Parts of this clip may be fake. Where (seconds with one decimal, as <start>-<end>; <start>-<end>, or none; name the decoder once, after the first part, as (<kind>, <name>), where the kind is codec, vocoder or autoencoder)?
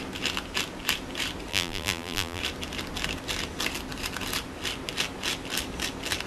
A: 1.5-2.4 (vocoder, BigVGAN v2)